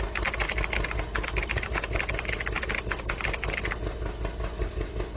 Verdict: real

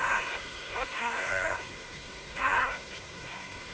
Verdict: fake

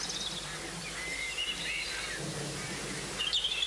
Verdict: real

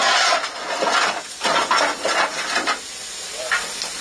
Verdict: real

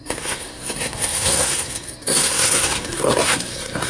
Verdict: fake